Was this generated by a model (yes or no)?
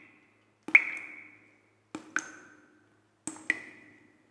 no